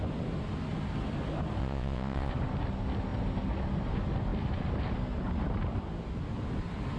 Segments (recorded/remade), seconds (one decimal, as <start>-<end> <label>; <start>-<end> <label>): 0.0-1.6 recorded; 1.6-2.3 remade; 2.3-7.0 recorded